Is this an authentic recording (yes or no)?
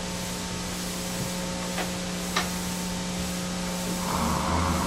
yes